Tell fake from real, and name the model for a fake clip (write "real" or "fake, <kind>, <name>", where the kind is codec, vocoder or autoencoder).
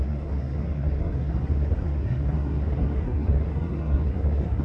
fake, codec, SNAC